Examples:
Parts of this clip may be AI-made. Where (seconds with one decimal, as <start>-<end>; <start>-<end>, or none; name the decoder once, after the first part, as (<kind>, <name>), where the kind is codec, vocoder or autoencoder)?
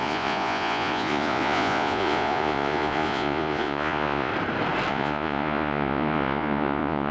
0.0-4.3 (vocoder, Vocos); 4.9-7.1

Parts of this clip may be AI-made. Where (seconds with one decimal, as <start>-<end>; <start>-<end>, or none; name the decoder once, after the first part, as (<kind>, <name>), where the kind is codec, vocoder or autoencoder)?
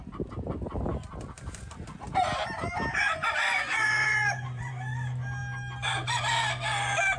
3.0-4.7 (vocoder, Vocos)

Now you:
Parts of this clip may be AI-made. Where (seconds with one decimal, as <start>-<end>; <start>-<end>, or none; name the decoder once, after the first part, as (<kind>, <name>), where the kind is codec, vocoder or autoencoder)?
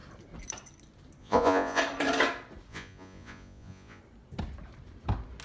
1.2-1.8 (vocoder, Vocos); 2.7-4.0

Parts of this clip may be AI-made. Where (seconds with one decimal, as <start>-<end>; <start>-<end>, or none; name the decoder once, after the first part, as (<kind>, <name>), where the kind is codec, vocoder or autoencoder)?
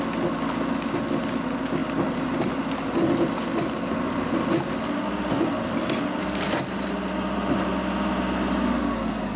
none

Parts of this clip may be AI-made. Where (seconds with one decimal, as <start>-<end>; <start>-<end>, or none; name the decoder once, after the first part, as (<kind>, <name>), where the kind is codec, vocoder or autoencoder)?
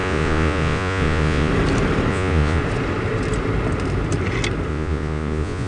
0.0-1.5 (vocoder, Vocos); 2.1-2.6; 4.7-5.7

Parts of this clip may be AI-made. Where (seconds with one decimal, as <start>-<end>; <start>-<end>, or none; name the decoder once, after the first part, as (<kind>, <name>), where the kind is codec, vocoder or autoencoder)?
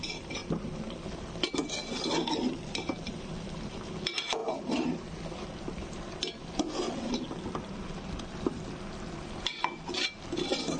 none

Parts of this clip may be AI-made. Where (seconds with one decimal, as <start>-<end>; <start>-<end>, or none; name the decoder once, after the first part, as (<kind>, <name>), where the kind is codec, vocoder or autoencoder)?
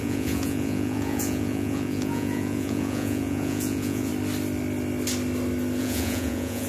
0.0-4.1 (vocoder, Vocos); 5.8-6.7